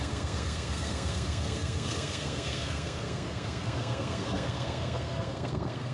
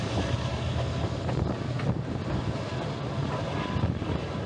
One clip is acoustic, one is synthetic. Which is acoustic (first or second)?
second